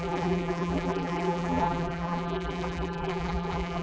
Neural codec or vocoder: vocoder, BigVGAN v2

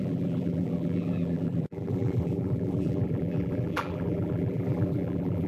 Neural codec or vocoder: vocoder, BigVGAN v2